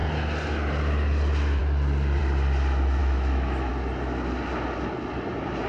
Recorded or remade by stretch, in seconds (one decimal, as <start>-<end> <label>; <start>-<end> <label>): 0.0-3.0 recorded; 3.0-3.7 remade; 3.7-5.7 recorded